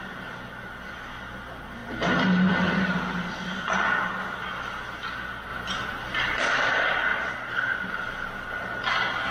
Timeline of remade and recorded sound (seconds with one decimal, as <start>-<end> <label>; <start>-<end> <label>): 0.0-7.1 recorded; 7.1-7.9 remade; 7.9-9.3 recorded